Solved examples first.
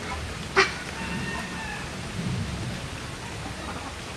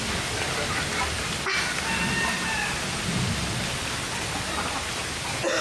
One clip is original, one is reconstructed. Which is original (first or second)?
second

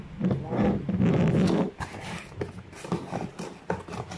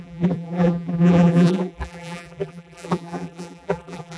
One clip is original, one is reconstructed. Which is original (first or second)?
first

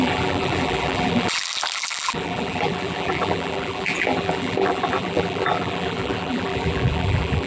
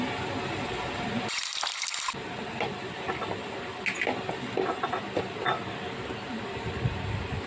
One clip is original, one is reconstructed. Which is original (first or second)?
second